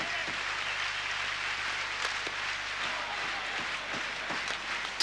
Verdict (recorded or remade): recorded